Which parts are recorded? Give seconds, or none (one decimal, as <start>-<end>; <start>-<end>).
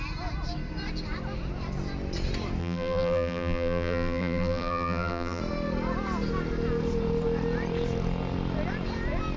0.0-2.6; 5.4-9.4